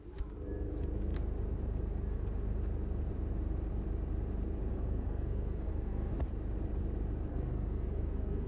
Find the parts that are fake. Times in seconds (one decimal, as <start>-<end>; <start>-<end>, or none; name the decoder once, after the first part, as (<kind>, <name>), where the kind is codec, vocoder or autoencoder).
4.7-6.1 (codec, SNAC); 7.3-8.5